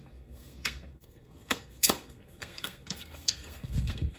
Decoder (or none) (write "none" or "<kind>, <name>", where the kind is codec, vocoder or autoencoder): codec, SNAC